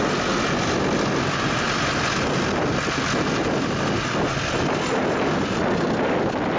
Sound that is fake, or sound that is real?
real